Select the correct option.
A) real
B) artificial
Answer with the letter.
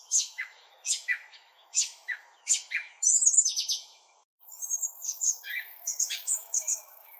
B